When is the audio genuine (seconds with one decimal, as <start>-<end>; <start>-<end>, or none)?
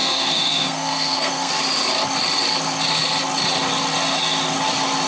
1.5-5.1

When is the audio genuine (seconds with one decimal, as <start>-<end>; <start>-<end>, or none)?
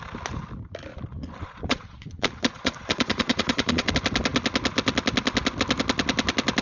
0.0-0.9; 3.9-6.6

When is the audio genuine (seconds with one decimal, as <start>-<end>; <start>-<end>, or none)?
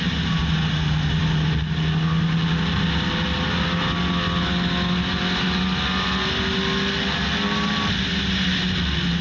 0.0-9.2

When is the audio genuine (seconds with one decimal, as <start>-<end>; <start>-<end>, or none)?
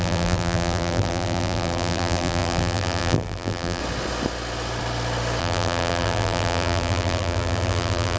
3.8-5.4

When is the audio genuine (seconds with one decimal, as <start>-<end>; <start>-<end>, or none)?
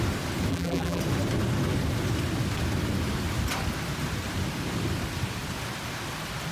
0.0-0.5; 1.0-6.5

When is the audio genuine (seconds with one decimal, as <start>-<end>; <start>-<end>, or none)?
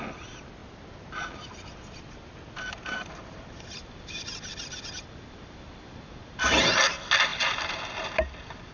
0.0-8.7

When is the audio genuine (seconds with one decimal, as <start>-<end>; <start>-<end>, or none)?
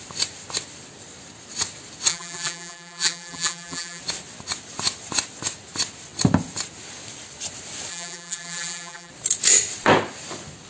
0.0-2.1; 4.0-7.9; 9.1-10.7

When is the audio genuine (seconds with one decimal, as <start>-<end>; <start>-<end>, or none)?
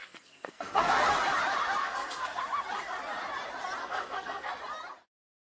1.0-1.8; 2.4-3.8; 4.5-5.5